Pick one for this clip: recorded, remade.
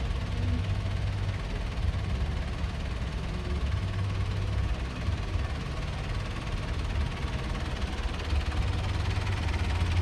recorded